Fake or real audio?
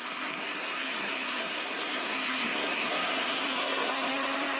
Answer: fake